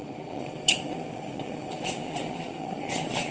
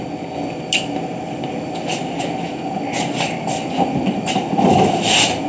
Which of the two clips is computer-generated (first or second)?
first